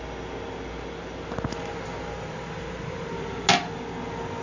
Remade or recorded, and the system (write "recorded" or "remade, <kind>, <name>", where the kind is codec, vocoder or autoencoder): recorded